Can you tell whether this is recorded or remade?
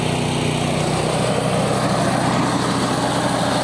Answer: recorded